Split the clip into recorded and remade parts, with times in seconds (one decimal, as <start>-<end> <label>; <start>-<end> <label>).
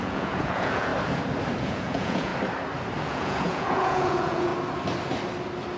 0.0-0.9 remade; 0.9-1.6 recorded; 1.6-2.3 remade; 2.3-3.0 recorded; 3.0-4.5 remade; 4.5-5.8 recorded